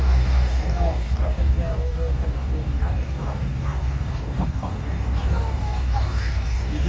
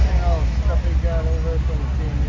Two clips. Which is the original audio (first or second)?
second